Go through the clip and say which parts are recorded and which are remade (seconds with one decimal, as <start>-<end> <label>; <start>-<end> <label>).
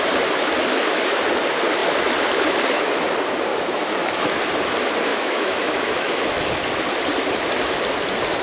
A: 0.0-0.7 recorded; 0.7-1.2 remade; 1.2-3.5 recorded; 3.5-4.4 remade; 4.4-5.1 recorded; 5.1-6.5 remade; 6.5-8.4 recorded